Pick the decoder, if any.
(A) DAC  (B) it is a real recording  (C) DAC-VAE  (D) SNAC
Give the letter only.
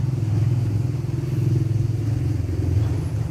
B